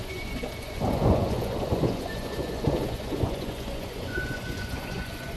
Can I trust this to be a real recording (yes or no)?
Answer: no